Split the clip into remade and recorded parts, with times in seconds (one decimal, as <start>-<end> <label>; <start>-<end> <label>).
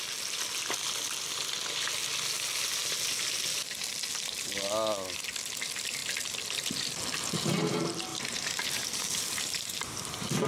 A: 0.0-8.1 recorded; 8.1-10.1 remade; 10.1-10.5 recorded